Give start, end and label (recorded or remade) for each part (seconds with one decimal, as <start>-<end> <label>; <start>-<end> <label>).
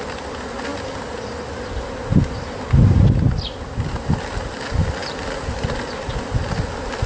0.0-7.1 recorded